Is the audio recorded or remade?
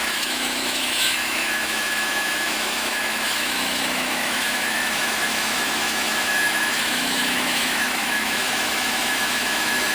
remade